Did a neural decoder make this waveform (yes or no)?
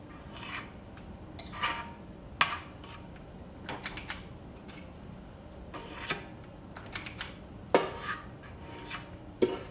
no